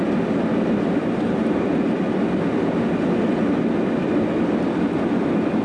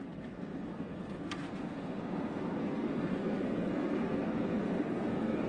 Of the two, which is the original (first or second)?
first